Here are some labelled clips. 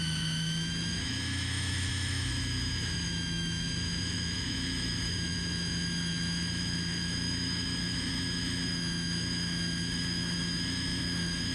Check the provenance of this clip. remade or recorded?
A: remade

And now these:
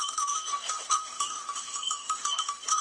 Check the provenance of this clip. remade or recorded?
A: remade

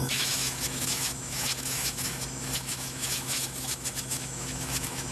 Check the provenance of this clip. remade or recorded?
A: remade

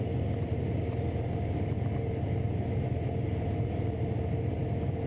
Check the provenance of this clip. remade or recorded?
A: recorded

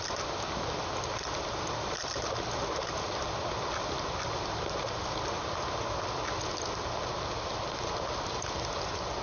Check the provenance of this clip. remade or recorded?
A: recorded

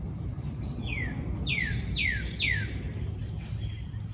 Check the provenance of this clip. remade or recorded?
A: recorded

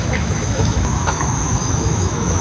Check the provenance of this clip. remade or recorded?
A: remade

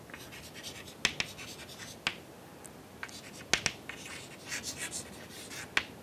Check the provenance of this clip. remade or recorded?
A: recorded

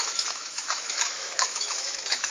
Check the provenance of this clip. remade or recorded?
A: remade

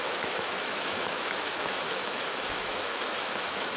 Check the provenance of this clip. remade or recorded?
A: remade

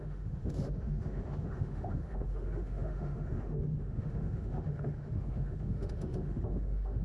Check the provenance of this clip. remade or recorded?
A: remade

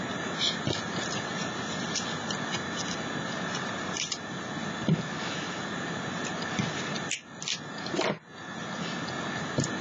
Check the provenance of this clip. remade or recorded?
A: recorded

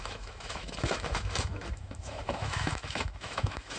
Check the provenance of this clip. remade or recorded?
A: remade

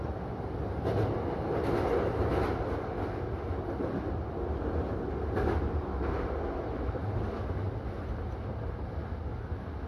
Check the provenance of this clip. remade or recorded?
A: recorded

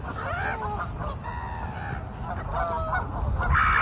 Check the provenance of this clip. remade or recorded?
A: recorded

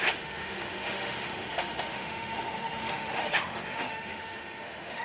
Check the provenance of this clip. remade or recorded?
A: remade